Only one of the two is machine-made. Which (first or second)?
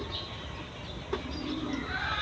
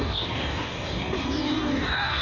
second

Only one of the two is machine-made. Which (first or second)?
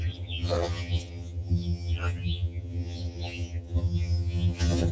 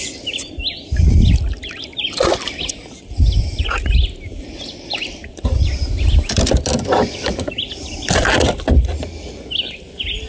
first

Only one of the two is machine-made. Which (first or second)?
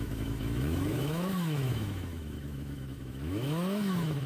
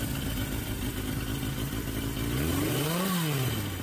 first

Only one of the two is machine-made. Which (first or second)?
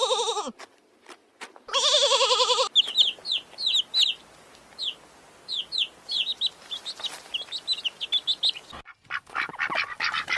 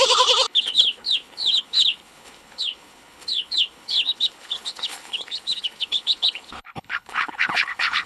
second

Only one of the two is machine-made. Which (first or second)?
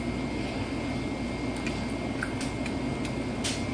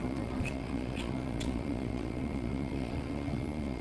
second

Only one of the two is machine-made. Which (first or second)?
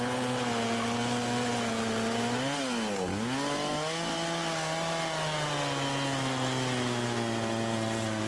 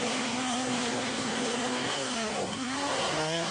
second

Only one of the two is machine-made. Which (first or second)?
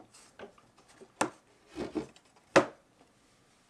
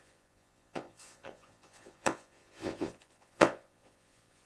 second